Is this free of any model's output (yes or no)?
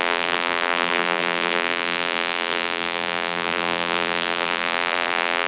no